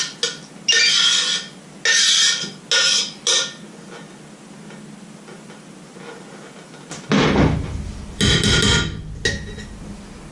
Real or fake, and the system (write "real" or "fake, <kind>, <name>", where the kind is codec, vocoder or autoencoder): real